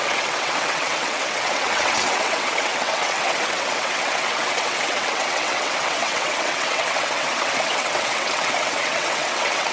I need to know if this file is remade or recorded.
remade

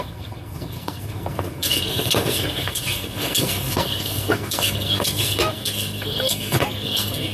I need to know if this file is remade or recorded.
remade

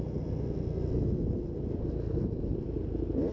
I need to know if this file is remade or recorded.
recorded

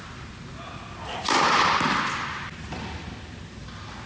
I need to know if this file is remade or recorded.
recorded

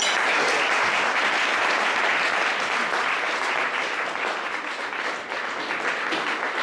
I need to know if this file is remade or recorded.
recorded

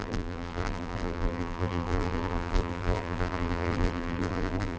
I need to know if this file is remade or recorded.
remade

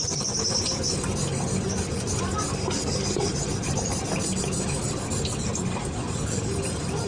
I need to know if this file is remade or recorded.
recorded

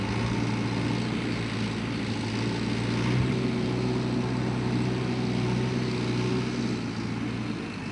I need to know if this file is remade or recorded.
recorded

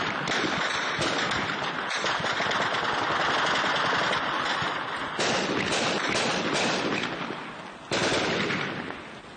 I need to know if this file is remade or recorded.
recorded